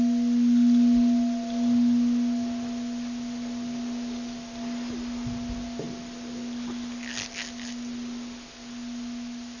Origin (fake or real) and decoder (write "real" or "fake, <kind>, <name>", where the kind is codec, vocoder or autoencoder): real